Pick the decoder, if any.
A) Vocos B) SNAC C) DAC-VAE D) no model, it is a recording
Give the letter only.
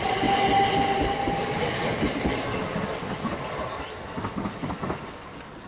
D